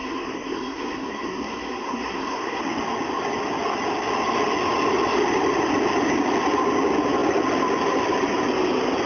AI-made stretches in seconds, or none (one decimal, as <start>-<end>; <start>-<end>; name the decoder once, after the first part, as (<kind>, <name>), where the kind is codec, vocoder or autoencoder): 0.0-2.6 (codec, SNAC)